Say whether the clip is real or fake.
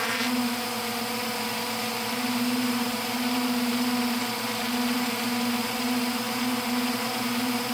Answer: fake